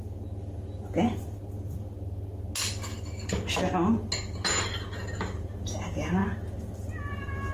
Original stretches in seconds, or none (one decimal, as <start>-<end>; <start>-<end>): 0.0-7.5

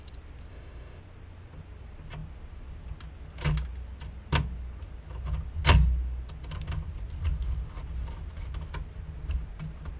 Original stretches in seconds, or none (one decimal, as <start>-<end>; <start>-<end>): 0.0-0.5; 1.0-10.0

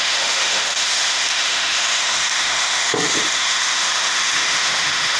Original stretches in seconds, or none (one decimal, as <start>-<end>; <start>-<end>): none